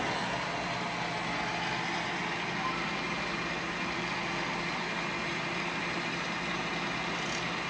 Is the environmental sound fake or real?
real